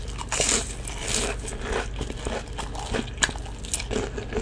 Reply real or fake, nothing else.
real